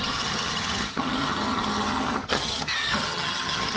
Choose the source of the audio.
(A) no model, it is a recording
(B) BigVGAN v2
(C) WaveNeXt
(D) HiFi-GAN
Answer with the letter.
D